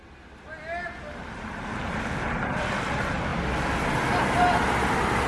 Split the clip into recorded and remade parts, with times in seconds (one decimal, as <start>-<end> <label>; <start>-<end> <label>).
0.0-5.3 recorded